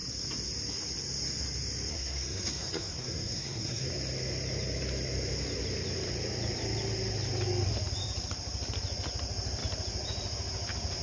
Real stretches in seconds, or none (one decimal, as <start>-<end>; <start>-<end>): 0.0-1.9; 3.9-11.0